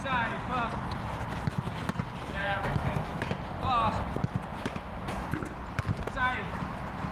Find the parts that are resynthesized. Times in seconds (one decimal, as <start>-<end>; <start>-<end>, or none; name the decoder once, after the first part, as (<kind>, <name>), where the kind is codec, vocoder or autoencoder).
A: 2.4-3.3 (autoencoder, DAC-VAE); 4.5-5.3